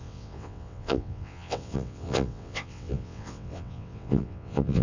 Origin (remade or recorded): remade